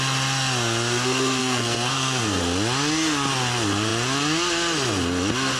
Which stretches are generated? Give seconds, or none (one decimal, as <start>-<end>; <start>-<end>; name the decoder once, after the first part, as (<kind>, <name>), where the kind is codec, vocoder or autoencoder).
1.4-2.4 (codec, SNAC)